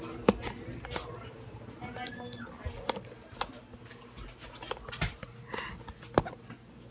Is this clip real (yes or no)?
yes